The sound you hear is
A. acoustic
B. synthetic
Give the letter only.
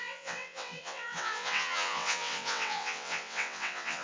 B